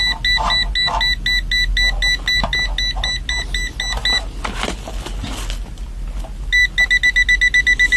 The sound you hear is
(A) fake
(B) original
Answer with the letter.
B